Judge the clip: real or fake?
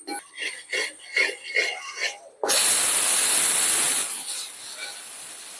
real